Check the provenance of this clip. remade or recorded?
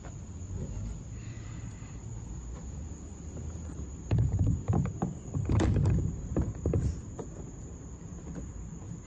remade